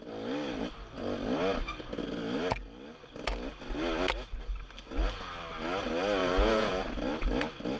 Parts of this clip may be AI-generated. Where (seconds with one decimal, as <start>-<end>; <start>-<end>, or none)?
6.2-6.8